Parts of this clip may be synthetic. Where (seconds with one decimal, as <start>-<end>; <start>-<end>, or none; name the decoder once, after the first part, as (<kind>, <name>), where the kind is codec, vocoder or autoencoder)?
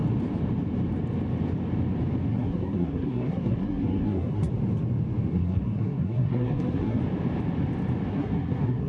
2.3-4.5 (codec, SNAC); 5.3-7.0; 8.1-8.9